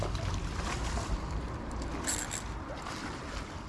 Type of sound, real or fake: fake